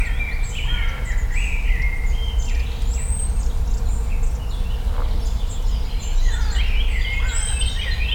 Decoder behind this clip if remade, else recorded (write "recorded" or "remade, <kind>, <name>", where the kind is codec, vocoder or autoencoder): recorded